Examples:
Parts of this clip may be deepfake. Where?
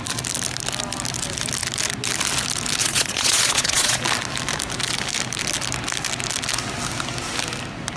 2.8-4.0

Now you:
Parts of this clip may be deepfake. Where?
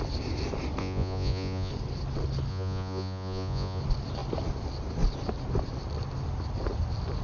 0.8-1.7; 2.5-3.8